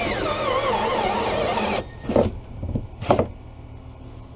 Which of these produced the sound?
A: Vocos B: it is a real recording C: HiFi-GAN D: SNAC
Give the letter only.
B